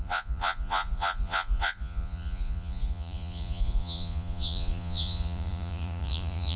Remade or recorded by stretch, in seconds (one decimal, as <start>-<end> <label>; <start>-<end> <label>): 0.0-6.6 remade